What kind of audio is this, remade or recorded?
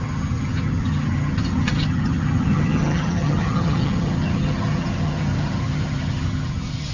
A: remade